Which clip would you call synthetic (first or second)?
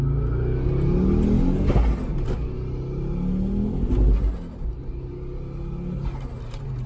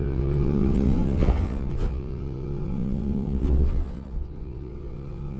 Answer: second